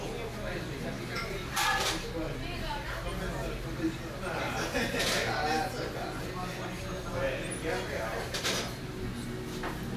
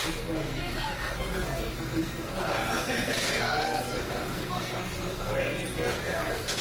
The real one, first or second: first